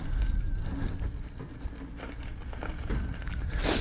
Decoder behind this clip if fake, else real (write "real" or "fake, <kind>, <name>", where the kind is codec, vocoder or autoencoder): real